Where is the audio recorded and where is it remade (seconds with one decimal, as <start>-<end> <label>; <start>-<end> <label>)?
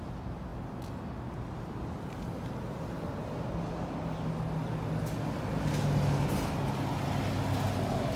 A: 0.0-8.2 recorded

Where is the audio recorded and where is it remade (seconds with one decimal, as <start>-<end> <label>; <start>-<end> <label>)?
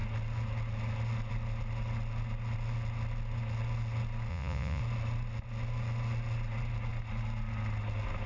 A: 0.0-4.3 recorded; 4.3-4.8 remade; 4.8-8.3 recorded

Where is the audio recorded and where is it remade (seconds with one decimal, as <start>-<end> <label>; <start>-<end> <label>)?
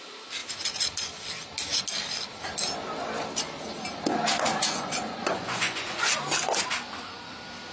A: 0.0-4.6 recorded; 4.6-6.1 remade; 6.1-7.7 recorded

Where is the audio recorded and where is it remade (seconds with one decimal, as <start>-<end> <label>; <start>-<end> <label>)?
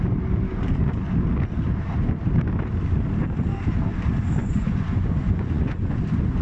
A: 0.0-4.4 recorded; 4.4-6.0 remade; 6.0-6.4 recorded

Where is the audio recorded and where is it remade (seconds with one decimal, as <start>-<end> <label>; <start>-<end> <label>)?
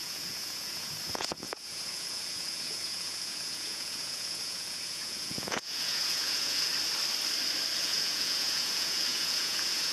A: 0.0-6.7 remade; 6.7-7.8 recorded; 7.8-9.9 remade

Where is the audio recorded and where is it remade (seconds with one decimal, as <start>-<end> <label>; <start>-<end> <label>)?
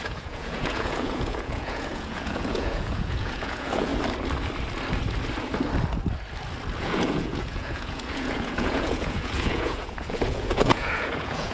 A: 0.0-3.9 remade; 3.9-6.8 recorded; 6.8-11.5 remade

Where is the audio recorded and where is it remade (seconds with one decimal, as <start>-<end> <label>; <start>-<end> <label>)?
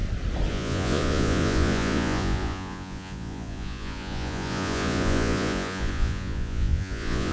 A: 0.0-0.5 recorded; 0.5-7.3 remade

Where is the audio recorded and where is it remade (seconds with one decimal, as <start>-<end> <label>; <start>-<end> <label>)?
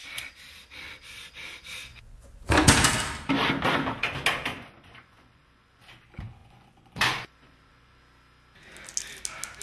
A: 0.0-1.9 recorded; 1.9-2.7 remade; 2.7-4.5 recorded; 4.5-5.8 remade; 5.8-6.4 recorded; 6.4-8.0 remade; 8.0-9.6 recorded